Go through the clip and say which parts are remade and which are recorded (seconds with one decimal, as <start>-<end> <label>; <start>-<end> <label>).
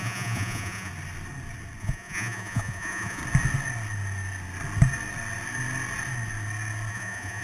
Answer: 0.0-0.9 remade; 0.9-1.8 recorded; 1.8-3.2 remade; 3.2-6.9 recorded; 6.9-7.4 remade